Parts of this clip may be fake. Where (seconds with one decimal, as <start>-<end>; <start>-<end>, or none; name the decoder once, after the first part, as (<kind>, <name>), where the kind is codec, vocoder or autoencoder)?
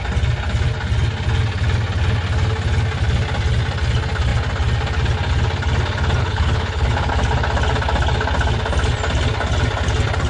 6.2-7.1 (codec, HILCodec)